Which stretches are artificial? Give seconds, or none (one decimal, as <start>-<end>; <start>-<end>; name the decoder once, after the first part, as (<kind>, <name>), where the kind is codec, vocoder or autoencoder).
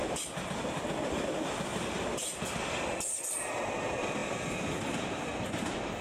1.7-2.4 (vocoder, BigVGAN v2)